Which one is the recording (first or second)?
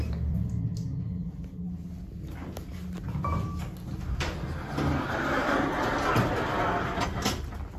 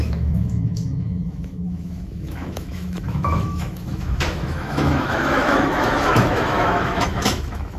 first